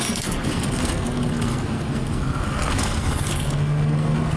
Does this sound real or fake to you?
fake